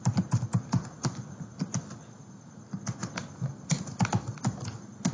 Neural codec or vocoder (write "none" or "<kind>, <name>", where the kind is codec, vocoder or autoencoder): none